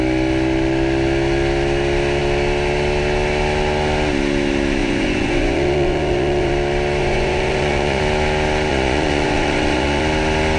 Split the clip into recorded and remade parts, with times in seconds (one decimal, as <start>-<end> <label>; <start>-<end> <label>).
0.0-4.8 recorded; 4.8-6.5 remade; 6.5-7.0 recorded; 7.0-8.0 remade; 8.0-8.7 recorded; 8.7-10.0 remade; 10.0-10.6 recorded

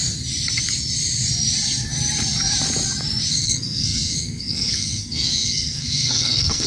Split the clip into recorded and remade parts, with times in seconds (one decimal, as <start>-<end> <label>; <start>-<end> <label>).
0.0-3.3 recorded; 3.3-6.7 remade

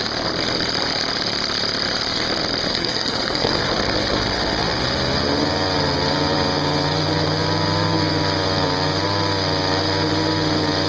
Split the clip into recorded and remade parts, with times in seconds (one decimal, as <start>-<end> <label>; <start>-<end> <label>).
0.0-2.7 recorded; 2.7-3.6 remade; 3.6-10.9 recorded

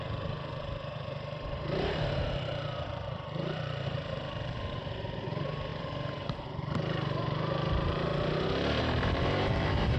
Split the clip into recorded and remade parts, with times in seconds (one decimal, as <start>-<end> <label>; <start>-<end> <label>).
0.0-8.1 remade; 8.1-8.8 recorded; 8.8-10.0 remade

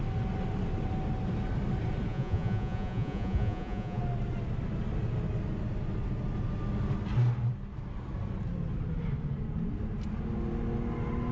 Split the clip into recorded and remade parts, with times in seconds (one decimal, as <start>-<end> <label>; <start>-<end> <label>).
0.0-2.1 recorded; 2.1-4.0 remade; 4.0-11.3 recorded

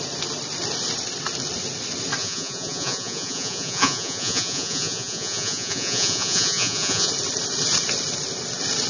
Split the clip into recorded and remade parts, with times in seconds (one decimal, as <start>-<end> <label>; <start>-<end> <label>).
0.0-2.2 recorded; 2.2-7.1 remade; 7.1-8.9 recorded